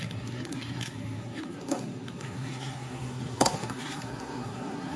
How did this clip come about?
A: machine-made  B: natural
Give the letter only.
A